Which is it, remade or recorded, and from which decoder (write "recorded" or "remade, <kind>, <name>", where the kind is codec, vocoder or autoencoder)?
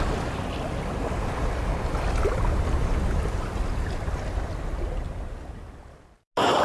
recorded